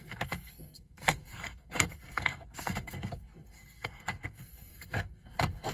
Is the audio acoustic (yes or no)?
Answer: no